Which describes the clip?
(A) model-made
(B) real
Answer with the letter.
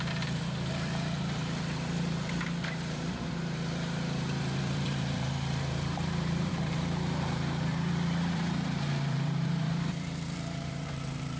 A